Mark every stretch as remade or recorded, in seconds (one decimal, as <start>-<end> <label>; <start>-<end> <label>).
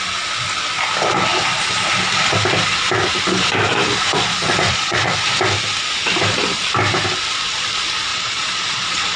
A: 0.0-4.1 recorded; 4.1-5.1 remade; 5.1-8.1 recorded; 8.1-9.2 remade